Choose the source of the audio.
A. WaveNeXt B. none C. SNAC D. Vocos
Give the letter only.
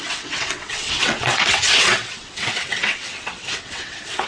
A